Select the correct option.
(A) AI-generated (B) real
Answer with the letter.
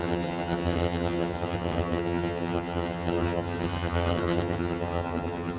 A